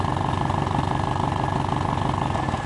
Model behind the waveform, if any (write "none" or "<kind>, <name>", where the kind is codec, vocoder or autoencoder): none